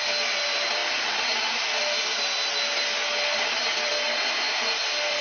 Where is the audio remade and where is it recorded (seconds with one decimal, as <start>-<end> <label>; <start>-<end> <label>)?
0.0-5.2 recorded